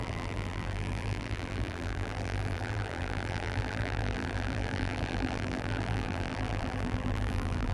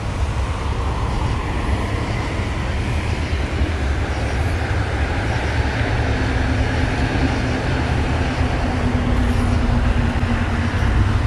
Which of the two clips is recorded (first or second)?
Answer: second